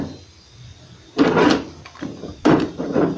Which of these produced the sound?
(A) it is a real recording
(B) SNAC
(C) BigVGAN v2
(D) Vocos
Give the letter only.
A